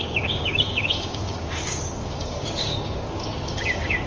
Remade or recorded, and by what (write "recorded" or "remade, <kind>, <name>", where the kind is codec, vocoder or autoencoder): remade, codec, DAC